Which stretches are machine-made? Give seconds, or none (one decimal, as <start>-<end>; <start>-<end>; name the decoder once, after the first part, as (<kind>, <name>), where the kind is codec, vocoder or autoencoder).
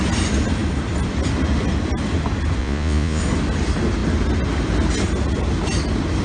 2.6-3.2 (vocoder, Vocos)